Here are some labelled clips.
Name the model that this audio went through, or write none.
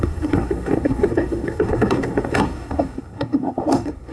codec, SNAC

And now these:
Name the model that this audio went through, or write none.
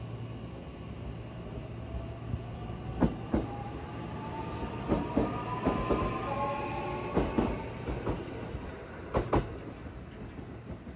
none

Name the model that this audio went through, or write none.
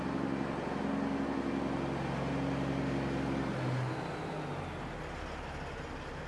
none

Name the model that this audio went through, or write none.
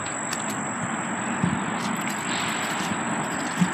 none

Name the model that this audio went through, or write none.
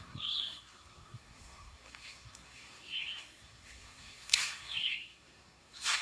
codec, SNAC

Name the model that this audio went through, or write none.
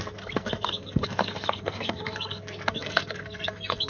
codec, SNAC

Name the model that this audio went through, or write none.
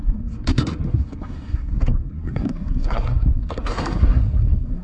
codec, SNAC